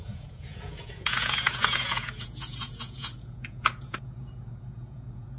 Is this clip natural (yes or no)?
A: no